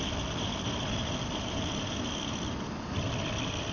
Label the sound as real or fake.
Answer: real